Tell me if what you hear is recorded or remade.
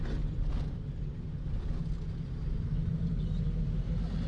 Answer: recorded